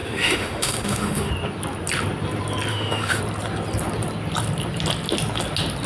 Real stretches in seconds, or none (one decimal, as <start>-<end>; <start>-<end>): 1.3-2.7; 3.2-5.9